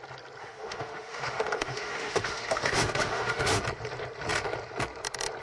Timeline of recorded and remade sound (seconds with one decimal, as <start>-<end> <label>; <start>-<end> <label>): 0.0-0.4 recorded; 0.4-3.6 remade; 3.6-5.4 recorded